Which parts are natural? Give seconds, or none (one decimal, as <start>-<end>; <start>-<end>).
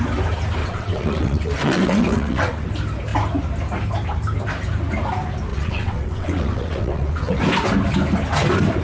0.0-0.6; 2.7-5.5; 7.4-8.8